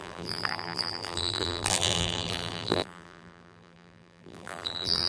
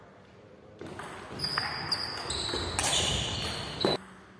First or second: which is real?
second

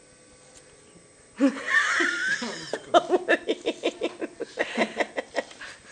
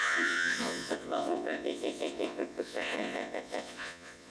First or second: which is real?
first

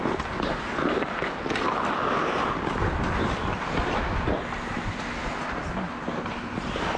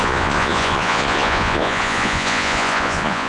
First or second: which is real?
first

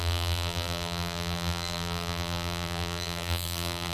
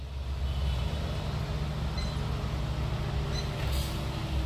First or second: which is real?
second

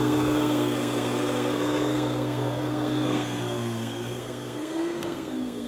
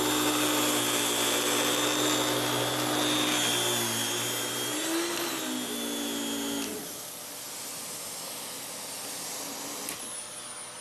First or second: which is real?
second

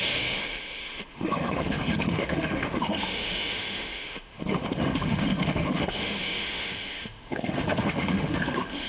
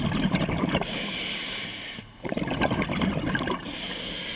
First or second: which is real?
second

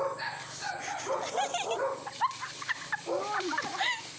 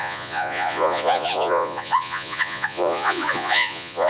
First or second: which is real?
first